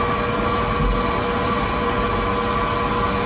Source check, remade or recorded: recorded